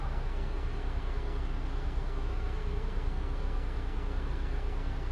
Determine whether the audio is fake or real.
fake